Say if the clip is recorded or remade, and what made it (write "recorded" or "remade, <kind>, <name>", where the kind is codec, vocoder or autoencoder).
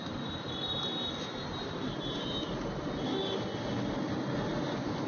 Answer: recorded